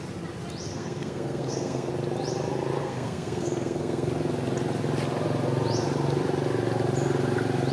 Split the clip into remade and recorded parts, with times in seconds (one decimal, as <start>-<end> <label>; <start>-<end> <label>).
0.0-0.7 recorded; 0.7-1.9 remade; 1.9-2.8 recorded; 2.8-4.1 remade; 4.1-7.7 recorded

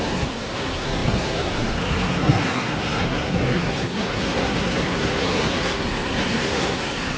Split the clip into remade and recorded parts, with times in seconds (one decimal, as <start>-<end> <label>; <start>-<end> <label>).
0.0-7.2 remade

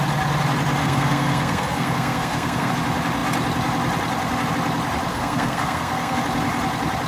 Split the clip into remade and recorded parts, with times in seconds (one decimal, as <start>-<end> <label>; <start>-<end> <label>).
0.0-0.8 recorded; 0.8-2.7 remade; 2.7-5.1 recorded; 5.1-6.2 remade; 6.2-7.1 recorded

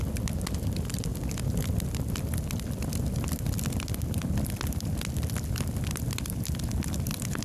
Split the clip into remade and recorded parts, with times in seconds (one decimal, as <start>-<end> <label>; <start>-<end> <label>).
0.0-7.4 recorded

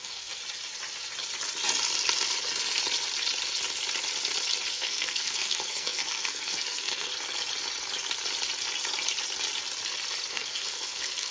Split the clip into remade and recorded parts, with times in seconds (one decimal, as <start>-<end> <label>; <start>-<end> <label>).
0.0-0.4 remade; 0.4-4.7 recorded; 4.7-7.1 remade; 7.1-10.3 recorded; 10.3-11.3 remade

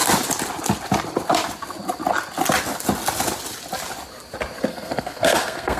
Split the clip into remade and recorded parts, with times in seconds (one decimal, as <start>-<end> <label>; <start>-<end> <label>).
0.0-4.7 recorded; 4.7-5.8 remade

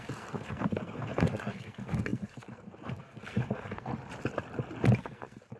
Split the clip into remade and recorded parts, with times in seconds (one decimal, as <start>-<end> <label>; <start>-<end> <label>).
0.0-3.9 remade; 3.9-5.0 recorded; 5.0-5.6 remade